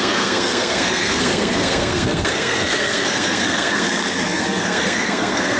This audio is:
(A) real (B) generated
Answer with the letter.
B